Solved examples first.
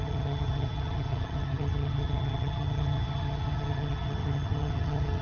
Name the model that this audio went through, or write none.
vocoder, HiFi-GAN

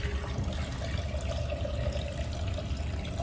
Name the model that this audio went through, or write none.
none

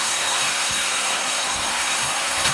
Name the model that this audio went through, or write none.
codec, SNAC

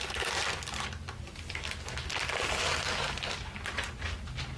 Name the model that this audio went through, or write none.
none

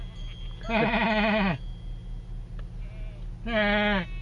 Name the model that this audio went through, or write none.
none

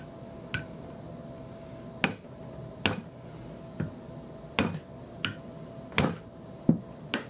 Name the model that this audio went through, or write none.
none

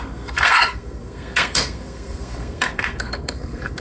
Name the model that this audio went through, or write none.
codec, SNAC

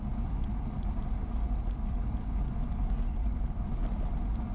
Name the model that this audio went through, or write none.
none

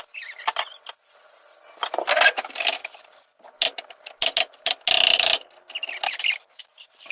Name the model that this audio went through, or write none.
none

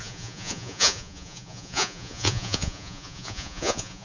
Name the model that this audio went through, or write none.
vocoder, Vocos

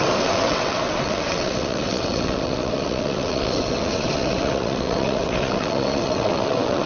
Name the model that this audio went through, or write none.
vocoder, WaveNeXt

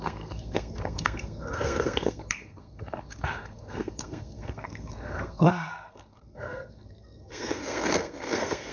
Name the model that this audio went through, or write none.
codec, SNAC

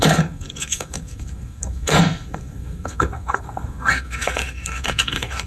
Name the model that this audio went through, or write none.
codec, SNAC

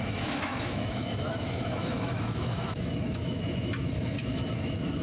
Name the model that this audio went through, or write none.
autoencoder, DAC-VAE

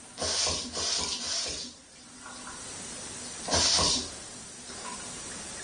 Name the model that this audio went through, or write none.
none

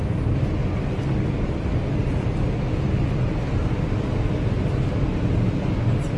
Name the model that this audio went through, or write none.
none